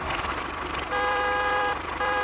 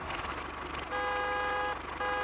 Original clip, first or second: second